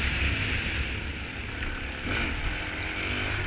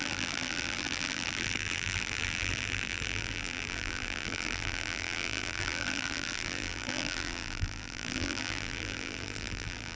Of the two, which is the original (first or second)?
first